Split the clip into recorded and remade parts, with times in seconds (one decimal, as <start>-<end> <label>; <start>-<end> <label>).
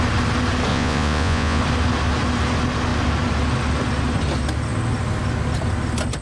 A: 0.0-0.7 recorded; 0.7-1.6 remade; 1.6-6.2 recorded